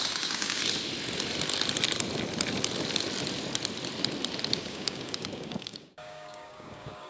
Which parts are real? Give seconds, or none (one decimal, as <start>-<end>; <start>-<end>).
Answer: 0.6-4.5